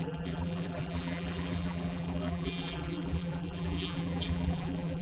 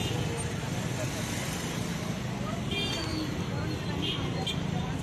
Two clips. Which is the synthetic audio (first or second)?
first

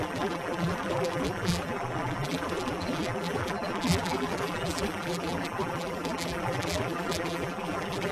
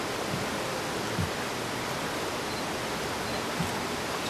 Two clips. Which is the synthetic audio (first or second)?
first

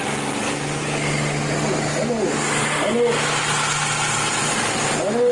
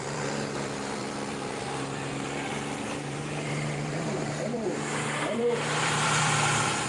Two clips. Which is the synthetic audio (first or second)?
second